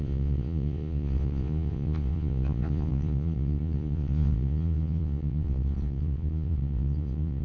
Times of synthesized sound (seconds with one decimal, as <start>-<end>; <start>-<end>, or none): 0.0-7.4